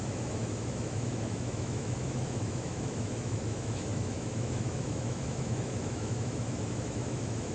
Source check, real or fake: fake